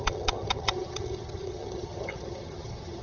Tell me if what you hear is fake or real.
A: fake